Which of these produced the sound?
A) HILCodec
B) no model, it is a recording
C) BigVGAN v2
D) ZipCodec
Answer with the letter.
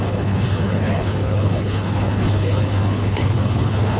A